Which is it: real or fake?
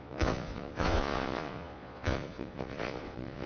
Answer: fake